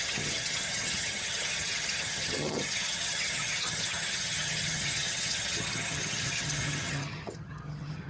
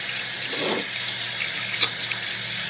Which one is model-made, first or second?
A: first